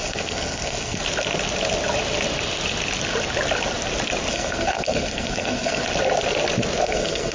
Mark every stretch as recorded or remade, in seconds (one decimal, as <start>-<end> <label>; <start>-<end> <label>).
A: 0.0-1.0 remade; 1.0-4.3 recorded; 4.3-5.8 remade; 5.8-6.8 recorded; 6.8-7.3 remade

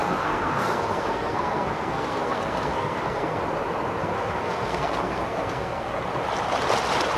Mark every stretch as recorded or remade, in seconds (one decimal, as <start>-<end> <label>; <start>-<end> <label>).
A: 0.0-3.4 remade; 3.4-4.0 recorded; 4.0-6.0 remade; 6.0-7.2 recorded

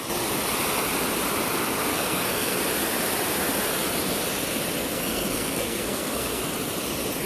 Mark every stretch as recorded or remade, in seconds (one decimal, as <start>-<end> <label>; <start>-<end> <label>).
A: 0.0-1.9 recorded; 1.9-2.6 remade; 2.6-4.8 recorded; 4.8-6.4 remade; 6.4-7.3 recorded